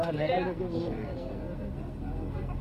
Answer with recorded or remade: remade